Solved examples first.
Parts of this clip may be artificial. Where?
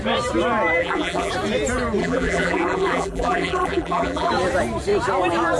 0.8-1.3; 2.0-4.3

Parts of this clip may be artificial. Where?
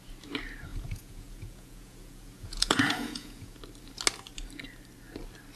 0.7-3.6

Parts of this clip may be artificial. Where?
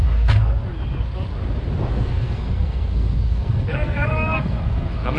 0.0-0.6; 1.9-5.2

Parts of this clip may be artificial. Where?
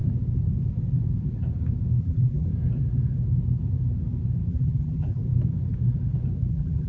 2.0-2.5; 4.5-5.2; 6.5-6.9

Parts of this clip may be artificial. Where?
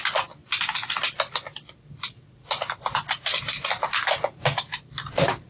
none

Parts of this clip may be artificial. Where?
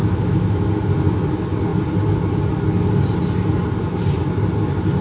0.0-0.7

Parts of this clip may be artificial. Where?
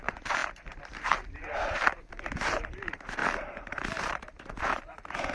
0.0-5.3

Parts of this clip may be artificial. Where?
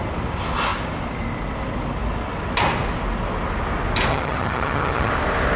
4.1-5.1